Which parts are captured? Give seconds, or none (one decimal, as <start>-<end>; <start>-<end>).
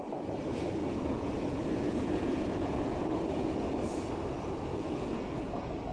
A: 0.0-0.8; 4.1-4.7; 5.5-5.9